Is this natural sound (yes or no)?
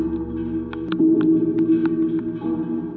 yes